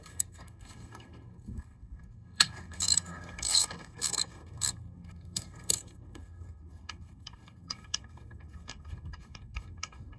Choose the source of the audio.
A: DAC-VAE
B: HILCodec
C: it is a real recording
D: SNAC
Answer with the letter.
D